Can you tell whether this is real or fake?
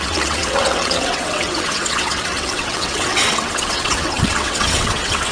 fake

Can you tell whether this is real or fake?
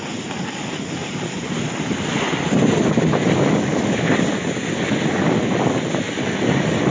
real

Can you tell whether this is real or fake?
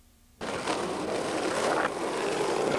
fake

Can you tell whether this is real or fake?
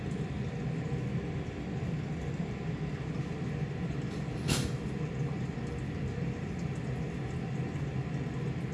real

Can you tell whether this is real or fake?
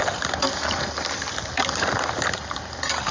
real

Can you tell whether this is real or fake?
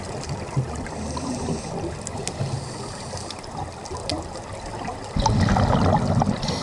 real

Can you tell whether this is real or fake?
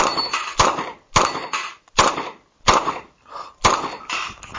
real